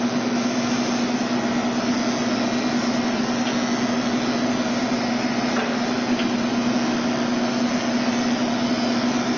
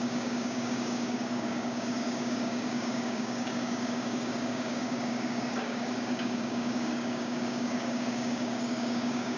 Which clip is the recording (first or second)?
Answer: first